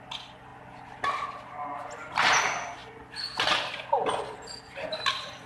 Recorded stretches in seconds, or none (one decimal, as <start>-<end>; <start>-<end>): 0.0-5.5